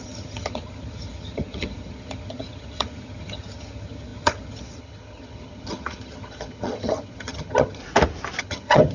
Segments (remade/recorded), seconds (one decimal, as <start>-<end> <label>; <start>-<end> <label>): 0.0-7.8 remade; 7.8-8.4 recorded; 8.4-8.9 remade